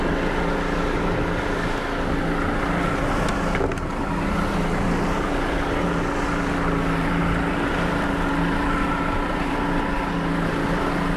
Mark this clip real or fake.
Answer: real